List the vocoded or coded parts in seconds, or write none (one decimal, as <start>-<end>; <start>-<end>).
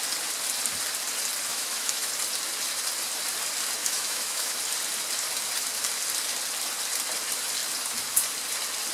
1.5-2.1; 3.8-4.6